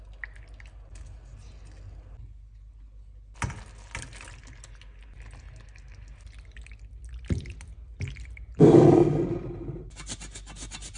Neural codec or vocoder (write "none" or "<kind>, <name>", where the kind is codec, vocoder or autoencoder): none